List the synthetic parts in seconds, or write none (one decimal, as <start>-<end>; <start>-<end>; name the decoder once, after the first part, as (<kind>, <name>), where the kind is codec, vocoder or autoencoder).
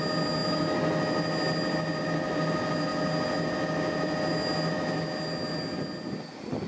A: none